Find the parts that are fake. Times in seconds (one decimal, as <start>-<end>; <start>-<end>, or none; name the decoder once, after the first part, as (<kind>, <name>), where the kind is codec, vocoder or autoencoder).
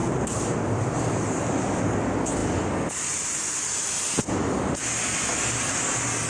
0.0-1.4 (vocoder, BigVGAN v2)